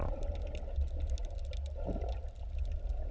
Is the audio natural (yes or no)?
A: yes